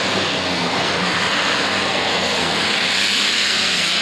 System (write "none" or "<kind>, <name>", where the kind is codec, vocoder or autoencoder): codec, SNAC